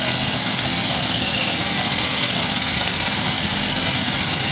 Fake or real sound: fake